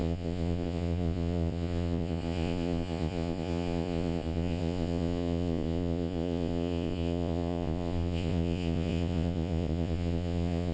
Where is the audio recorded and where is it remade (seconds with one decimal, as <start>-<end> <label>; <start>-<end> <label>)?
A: 0.0-10.7 remade